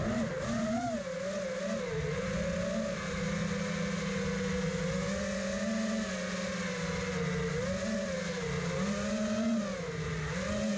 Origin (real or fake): real